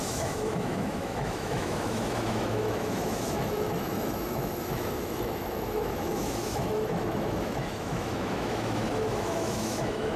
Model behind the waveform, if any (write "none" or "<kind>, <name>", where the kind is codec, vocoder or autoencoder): autoencoder, DAC-VAE